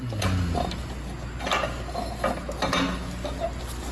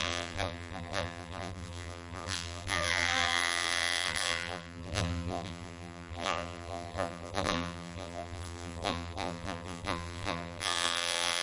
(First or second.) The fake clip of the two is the second